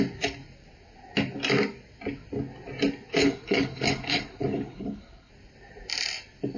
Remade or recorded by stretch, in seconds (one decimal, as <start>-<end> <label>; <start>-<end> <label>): 0.0-3.2 recorded; 3.2-5.3 remade; 5.3-6.6 recorded